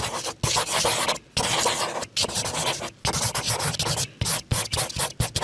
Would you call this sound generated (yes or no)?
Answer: no